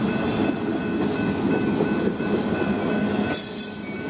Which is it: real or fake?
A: real